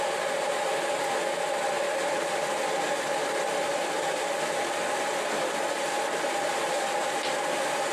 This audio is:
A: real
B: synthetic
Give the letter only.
A